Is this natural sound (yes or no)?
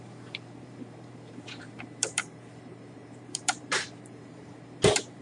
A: no